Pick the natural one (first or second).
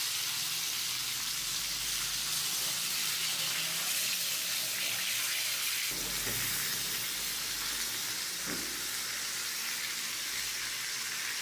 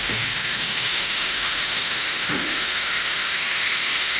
first